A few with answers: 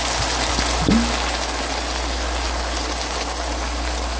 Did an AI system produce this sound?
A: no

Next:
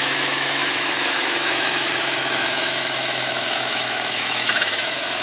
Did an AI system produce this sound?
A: yes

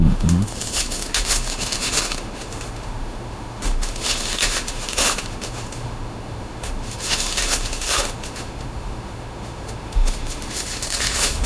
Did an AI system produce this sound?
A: yes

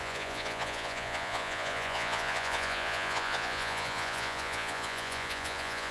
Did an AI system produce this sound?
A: yes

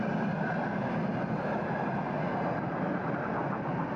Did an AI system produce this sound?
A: no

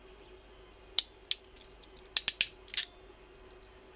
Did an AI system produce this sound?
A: no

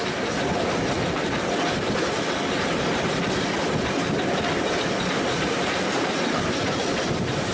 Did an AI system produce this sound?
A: no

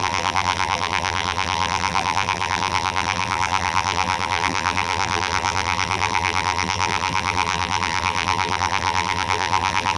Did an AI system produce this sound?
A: yes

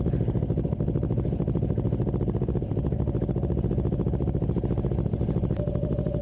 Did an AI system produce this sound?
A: no